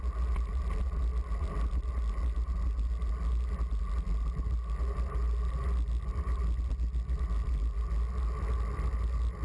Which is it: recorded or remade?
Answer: recorded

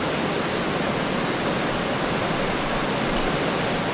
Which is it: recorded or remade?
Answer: recorded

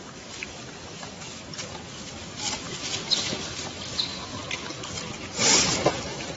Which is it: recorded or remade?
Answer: recorded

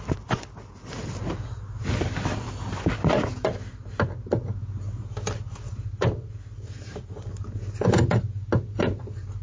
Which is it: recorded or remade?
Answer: recorded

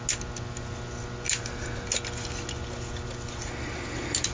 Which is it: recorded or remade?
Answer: recorded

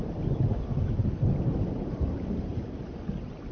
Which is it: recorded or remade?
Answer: recorded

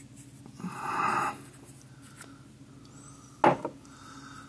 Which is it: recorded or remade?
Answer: recorded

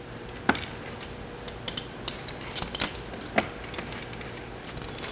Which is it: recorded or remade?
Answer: recorded